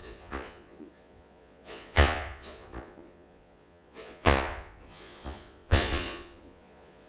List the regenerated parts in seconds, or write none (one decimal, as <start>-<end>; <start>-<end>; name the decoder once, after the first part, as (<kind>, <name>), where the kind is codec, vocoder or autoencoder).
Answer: 0.0-7.1 (vocoder, Vocos)